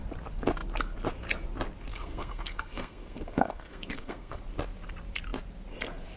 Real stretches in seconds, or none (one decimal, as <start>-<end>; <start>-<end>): 0.0-1.9; 4.4-6.2